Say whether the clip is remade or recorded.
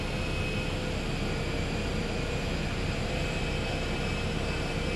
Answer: recorded